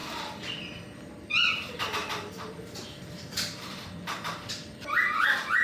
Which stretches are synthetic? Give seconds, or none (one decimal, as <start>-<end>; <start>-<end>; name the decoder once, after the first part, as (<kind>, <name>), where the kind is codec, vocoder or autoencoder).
0.0-1.1 (vocoder, BigVGAN v2); 2.0-5.6